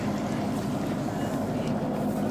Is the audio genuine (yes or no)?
yes